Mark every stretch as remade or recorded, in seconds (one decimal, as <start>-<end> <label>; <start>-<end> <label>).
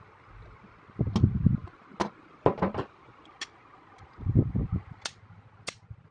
0.0-6.1 recorded